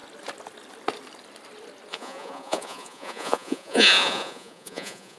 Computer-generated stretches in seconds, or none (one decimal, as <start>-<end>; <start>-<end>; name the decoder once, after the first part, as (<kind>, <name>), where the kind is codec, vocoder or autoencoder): 1.9-5.2 (vocoder, Vocos)